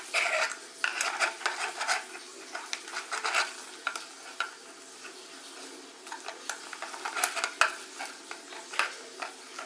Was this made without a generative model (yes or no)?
yes